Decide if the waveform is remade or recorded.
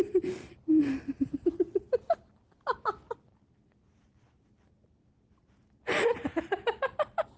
recorded